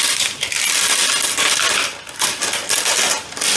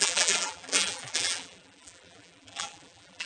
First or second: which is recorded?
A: first